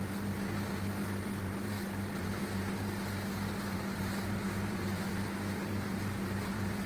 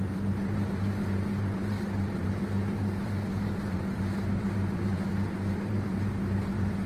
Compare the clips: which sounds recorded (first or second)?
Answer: first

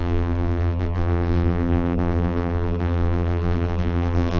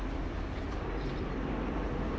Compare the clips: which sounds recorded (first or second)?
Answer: second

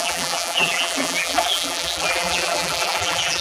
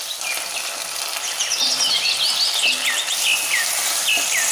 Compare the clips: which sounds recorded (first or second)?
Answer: second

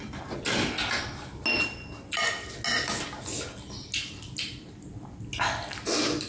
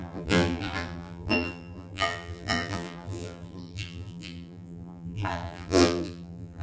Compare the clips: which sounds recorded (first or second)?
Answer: first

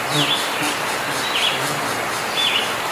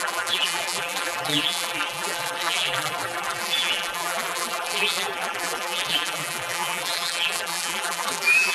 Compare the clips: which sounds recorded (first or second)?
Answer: first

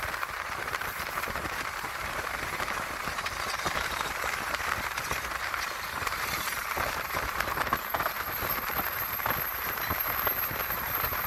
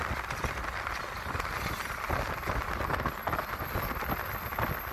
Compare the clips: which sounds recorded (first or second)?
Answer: second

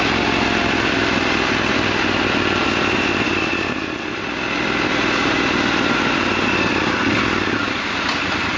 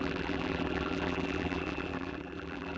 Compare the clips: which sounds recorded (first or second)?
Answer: first